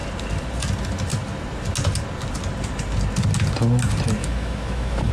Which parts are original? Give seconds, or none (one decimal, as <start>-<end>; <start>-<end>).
0.0-4.2